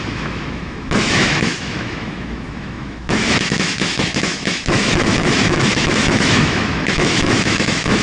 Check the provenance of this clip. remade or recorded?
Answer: remade